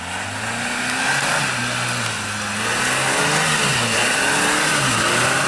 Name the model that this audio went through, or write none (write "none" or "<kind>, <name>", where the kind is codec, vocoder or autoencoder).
none